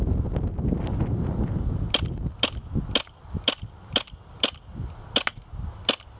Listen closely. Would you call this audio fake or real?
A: real